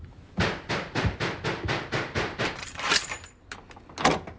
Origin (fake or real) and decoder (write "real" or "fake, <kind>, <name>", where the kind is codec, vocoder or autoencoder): real